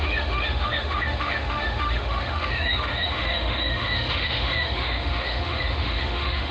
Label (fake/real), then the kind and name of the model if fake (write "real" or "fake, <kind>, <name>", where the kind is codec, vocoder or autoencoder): fake, autoencoder, DAC-VAE